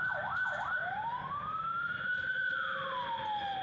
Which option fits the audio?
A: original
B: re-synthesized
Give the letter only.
A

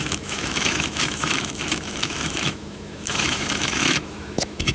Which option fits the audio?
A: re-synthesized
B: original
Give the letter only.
A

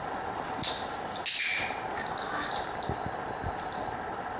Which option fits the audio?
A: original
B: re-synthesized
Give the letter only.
A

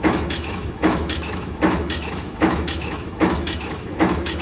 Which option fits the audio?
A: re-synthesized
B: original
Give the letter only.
A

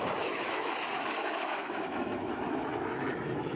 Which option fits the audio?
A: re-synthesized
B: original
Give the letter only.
A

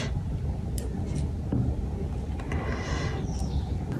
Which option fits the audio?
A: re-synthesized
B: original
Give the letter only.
B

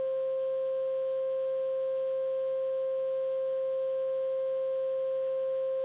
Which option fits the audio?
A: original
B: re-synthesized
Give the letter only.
B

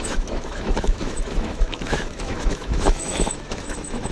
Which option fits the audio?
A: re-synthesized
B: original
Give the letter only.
A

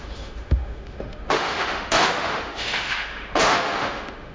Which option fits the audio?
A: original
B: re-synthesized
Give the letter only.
B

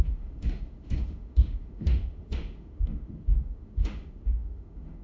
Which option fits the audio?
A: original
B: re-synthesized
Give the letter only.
B